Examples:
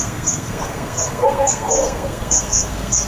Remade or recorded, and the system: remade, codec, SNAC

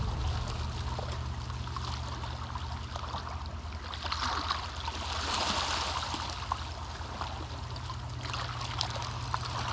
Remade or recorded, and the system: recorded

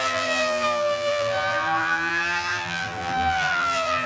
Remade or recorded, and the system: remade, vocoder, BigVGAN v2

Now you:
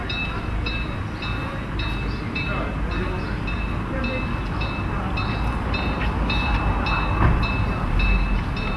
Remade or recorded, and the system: recorded